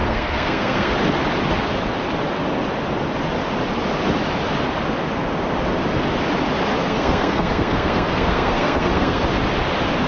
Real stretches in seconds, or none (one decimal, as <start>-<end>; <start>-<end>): 0.9-6.8; 9.2-10.1

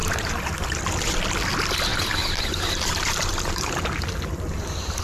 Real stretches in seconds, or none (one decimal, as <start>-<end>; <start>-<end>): 0.8-1.9; 3.8-5.0

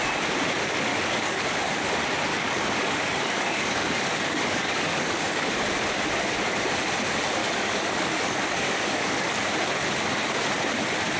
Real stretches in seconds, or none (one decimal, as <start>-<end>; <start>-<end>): 0.0-0.9; 1.4-2.3; 5.5-7.4; 9.3-11.2

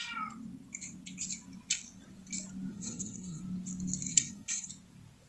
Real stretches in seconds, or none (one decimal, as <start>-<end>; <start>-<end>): 0.0-2.7; 3.4-4.1; 4.7-5.3

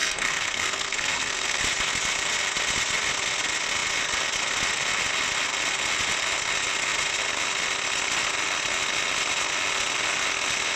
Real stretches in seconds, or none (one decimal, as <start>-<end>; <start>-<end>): 1.6-10.8

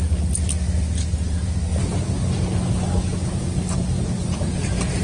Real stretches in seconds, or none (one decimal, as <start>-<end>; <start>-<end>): 0.0-5.0

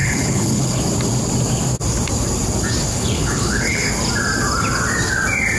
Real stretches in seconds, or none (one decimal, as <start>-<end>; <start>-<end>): 0.8-2.9; 3.9-5.6